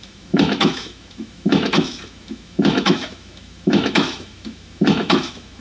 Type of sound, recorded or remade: remade